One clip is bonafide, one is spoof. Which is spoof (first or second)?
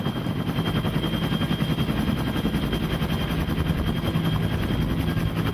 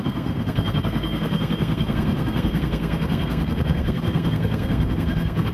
second